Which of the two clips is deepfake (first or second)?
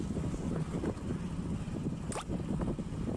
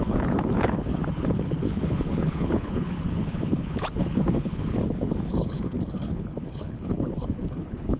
second